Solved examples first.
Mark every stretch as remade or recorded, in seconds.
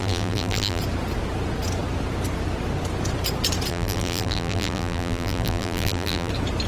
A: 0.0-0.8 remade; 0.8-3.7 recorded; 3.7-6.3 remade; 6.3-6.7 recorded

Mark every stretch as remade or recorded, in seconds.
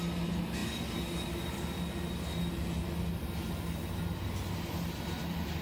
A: 0.0-5.6 recorded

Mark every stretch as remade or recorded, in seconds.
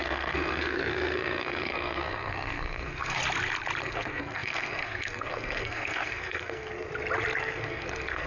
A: 0.0-3.2 remade; 3.2-3.8 recorded; 3.8-6.9 remade; 6.9-7.4 recorded; 7.4-8.3 remade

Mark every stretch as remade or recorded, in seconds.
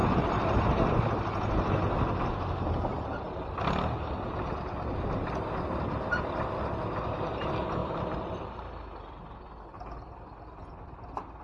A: 0.0-0.5 remade; 0.5-7.8 recorded; 7.8-8.5 remade; 8.5-11.4 recorded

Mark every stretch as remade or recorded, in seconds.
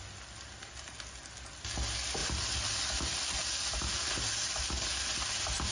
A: 0.0-2.2 recorded; 2.2-2.9 remade; 2.9-5.7 recorded